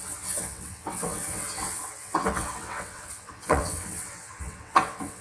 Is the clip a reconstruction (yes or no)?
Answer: yes